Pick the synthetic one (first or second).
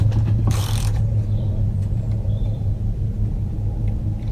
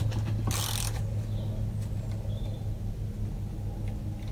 first